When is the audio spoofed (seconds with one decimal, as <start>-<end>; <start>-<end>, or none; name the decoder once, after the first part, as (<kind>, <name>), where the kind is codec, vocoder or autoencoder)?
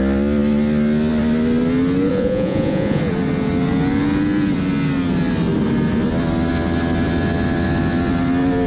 2.1-3.0 (vocoder, Vocos)